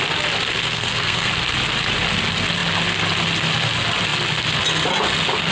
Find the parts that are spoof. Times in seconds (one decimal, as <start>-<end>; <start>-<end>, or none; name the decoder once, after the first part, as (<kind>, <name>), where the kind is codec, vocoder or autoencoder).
0.6-1.3 (codec, SNAC)